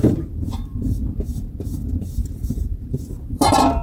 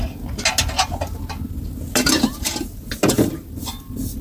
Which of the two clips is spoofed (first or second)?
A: first